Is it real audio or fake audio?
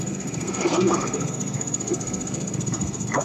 fake